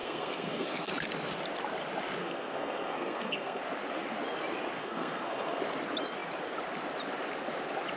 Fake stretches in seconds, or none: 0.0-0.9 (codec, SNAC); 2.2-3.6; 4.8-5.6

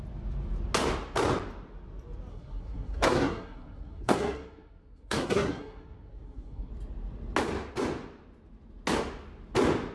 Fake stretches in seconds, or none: 2.3-6.7 (codec, SNAC)

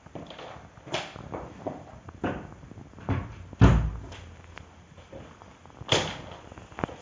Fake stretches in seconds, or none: none

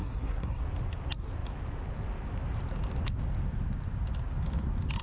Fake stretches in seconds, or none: 0.0-0.6 (codec, SNAC)

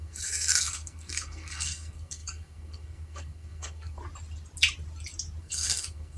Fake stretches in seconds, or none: 0.0-4.0 (codec, SNAC); 5.4-6.2

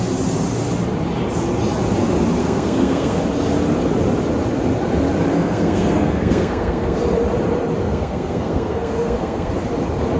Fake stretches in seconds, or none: 2.4-3.2 (codec, SNAC); 5.3-7.0; 7.8-9.5